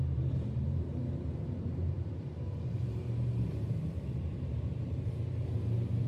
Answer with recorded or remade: remade